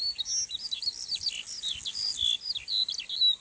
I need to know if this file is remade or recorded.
recorded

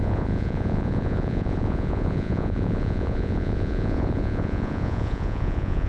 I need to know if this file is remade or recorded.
remade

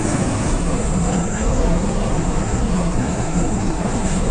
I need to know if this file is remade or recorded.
remade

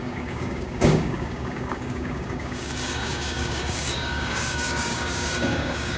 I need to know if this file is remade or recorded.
remade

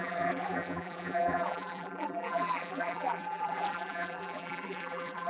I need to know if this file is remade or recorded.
remade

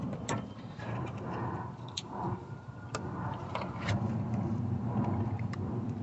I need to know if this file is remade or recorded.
remade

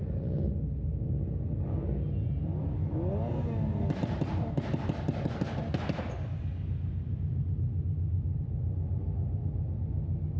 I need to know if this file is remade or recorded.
recorded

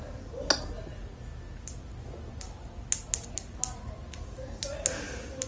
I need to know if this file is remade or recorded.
recorded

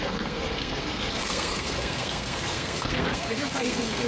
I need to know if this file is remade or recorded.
remade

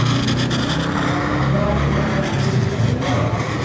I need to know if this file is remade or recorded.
recorded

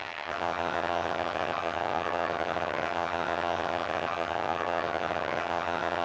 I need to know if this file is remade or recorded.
remade